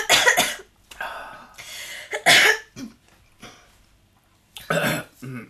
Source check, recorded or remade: recorded